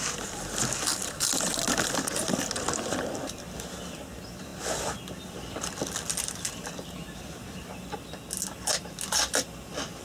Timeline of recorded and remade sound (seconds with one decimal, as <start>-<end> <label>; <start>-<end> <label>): 0.0-10.0 recorded